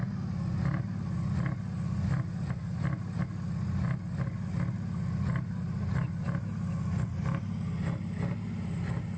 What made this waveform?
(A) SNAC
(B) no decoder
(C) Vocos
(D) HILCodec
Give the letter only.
B